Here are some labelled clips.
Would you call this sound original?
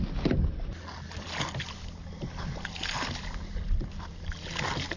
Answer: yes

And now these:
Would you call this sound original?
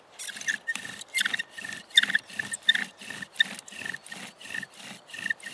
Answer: yes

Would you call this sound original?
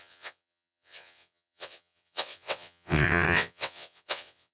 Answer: no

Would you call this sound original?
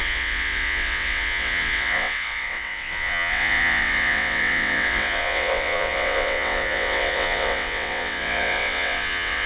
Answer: no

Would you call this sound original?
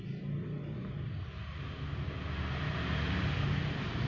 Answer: yes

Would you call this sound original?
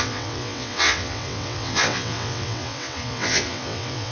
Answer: no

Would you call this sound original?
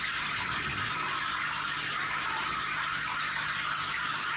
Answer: yes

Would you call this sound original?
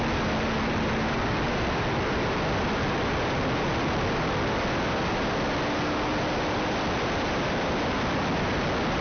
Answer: yes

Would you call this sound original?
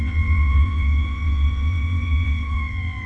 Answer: no